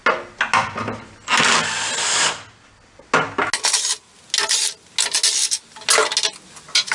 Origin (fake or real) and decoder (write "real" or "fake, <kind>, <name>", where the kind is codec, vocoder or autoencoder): real